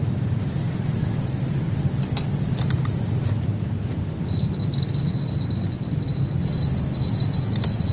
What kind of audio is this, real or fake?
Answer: real